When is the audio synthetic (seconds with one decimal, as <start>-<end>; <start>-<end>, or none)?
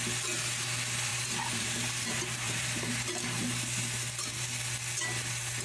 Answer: 1.1-4.5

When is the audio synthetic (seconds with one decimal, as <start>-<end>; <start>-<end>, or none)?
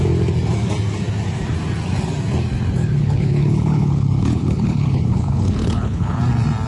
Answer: 3.0-6.2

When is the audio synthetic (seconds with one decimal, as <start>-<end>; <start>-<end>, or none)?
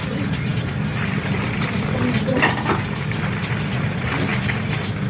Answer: 0.0-4.3